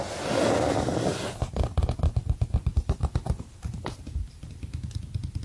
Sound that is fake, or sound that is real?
real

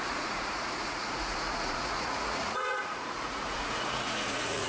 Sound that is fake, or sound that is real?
fake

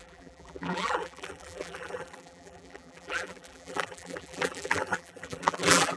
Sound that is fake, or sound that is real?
fake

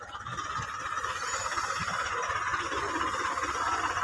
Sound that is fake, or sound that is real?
real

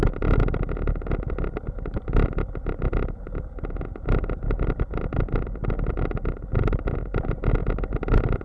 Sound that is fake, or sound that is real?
real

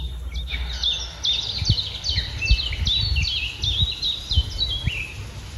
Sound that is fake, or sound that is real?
real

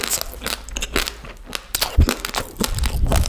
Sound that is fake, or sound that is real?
real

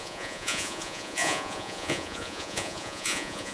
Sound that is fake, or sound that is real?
fake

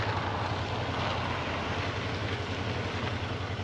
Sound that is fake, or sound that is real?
real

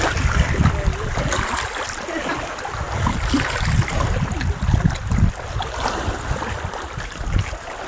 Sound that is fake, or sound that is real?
real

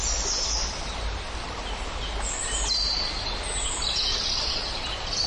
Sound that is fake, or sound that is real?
real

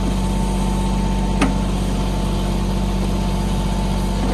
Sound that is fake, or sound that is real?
real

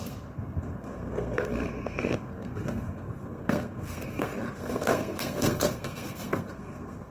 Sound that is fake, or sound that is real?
fake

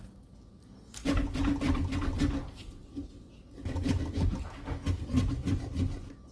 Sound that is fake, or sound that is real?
real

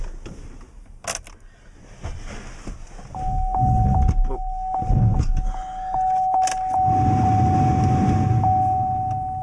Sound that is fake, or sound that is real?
real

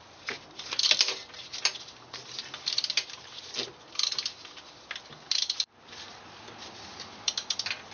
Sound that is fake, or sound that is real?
fake